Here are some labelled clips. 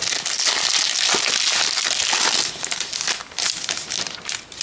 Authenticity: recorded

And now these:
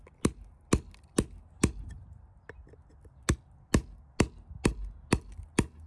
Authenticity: recorded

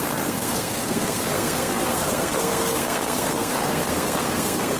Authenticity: remade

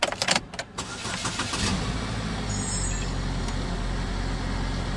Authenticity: recorded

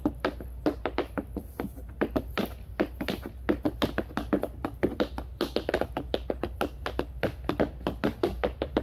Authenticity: recorded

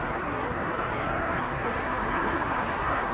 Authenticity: remade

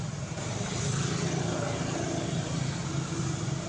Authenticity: recorded